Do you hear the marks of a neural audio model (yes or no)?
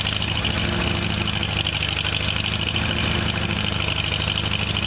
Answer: no